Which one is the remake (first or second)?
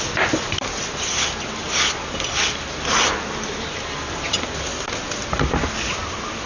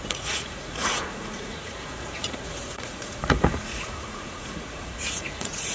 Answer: second